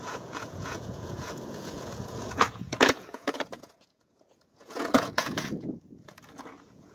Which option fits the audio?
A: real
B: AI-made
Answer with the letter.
B